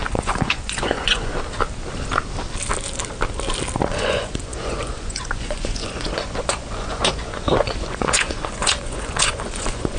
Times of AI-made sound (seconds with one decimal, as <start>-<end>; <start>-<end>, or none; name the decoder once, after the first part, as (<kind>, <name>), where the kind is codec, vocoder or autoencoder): 0.0-1.3 (vocoder, Vocos); 3.9-10.0